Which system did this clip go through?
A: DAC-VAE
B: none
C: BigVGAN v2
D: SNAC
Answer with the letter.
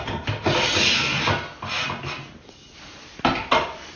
B